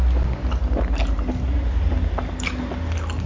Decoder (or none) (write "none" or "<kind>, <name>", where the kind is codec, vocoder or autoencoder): none